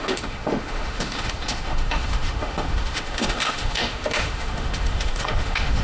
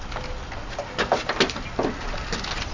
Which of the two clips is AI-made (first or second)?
first